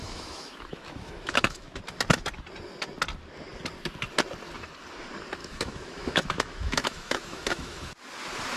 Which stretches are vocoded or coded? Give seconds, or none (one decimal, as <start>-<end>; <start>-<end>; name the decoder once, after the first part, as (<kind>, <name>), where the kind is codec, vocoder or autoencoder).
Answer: 0.0-1.8 (autoencoder, DAC-VAE); 5.4-7.9